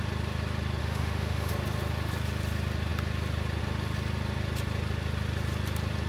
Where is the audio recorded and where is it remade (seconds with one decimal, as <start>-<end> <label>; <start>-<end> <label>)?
0.0-0.8 recorded; 0.8-1.5 remade; 1.5-6.1 recorded